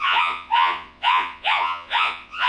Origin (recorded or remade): remade